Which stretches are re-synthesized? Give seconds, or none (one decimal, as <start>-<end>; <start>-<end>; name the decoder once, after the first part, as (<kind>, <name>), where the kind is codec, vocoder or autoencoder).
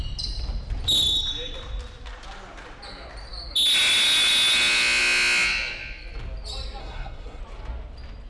6.8-7.4 (codec, SNAC)